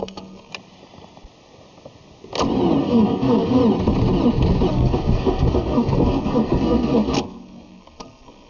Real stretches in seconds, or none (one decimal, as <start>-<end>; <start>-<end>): 0.5-2.8; 3.6-4.7